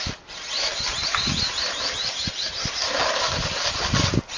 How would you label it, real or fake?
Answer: real